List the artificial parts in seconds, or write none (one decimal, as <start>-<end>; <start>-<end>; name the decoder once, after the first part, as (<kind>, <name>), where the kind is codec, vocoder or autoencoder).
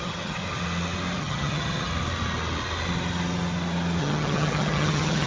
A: 0.0-0.4 (vocoder, HiFi-GAN); 1.2-1.9; 4.0-5.3